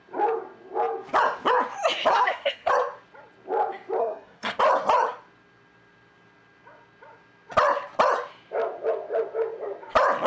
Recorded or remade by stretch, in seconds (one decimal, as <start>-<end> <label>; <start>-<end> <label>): 0.0-2.1 recorded; 2.1-2.7 remade; 2.7-4.0 recorded; 4.0-4.6 remade; 4.6-10.3 recorded